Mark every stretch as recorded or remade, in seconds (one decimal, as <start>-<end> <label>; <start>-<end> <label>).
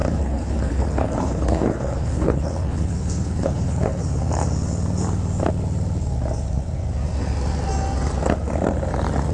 0.0-4.0 remade; 4.0-9.3 recorded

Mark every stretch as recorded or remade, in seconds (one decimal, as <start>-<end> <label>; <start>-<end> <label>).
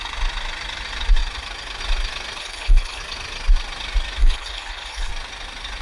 0.0-2.4 recorded; 2.4-3.0 remade; 3.0-4.2 recorded; 4.2-5.1 remade; 5.1-5.8 recorded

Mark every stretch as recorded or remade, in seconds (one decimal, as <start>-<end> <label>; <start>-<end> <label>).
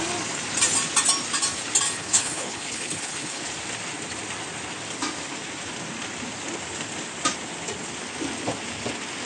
0.0-2.0 recorded; 2.0-3.4 remade; 3.4-9.3 recorded